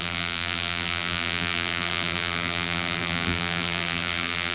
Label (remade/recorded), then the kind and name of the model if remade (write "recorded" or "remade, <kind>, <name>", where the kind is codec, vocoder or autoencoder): remade, vocoder, BigVGAN v2